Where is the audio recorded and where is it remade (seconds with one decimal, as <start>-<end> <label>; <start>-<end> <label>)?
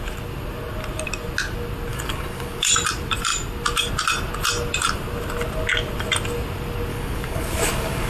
0.0-1.9 recorded; 1.9-2.7 remade; 2.7-6.9 recorded; 6.9-8.1 remade